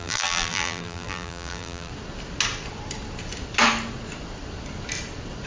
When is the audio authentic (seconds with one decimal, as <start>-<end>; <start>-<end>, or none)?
1.9-5.5